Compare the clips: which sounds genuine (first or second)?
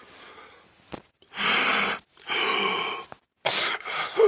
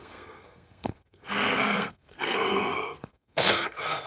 first